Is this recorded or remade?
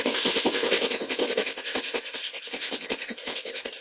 remade